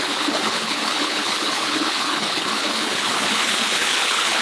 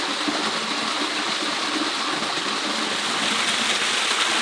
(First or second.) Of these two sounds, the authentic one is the second